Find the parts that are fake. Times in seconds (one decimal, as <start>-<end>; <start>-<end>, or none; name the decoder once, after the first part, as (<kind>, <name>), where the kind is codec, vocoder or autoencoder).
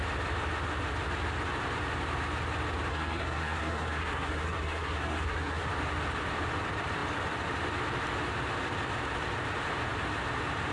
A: 2.9-5.7 (codec, SNAC)